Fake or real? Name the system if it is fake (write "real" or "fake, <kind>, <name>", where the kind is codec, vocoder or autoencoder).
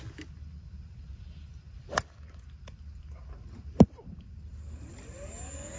real